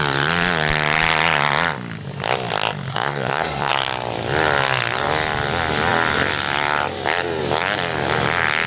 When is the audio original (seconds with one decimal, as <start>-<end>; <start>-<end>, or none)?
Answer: 0.0-2.9; 3.7-8.7